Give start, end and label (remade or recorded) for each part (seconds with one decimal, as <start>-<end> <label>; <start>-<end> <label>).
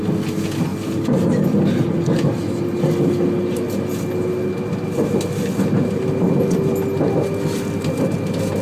0.0-8.6 recorded